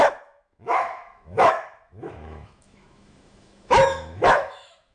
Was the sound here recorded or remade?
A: remade